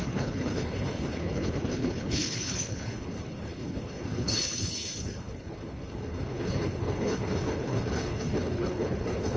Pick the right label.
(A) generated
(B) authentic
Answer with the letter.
A